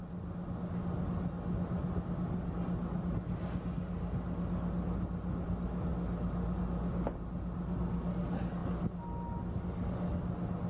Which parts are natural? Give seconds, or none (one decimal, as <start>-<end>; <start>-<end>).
0.0-10.7